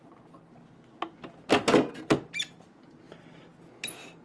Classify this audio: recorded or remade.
recorded